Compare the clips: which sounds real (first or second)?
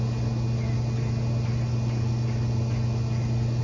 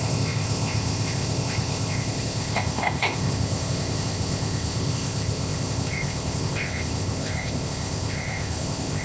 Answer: first